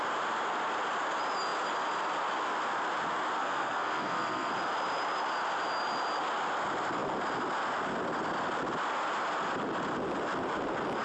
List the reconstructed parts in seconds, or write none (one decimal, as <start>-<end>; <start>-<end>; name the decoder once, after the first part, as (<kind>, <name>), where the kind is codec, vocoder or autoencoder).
3.4-4.5 (codec, SNAC)